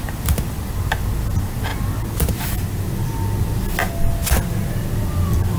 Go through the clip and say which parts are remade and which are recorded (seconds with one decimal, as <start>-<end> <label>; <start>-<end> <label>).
0.0-5.6 recorded